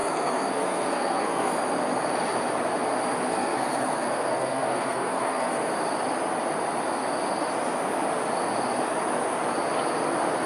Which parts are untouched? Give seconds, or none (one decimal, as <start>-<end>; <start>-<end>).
1.5-3.3; 5.7-10.5